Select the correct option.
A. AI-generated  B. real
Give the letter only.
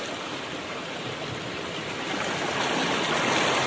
B